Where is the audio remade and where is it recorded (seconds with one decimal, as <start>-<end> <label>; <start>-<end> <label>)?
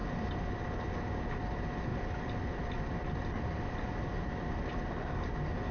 0.0-1.9 recorded; 1.9-5.3 remade; 5.3-5.7 recorded